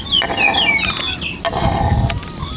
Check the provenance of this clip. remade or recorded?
recorded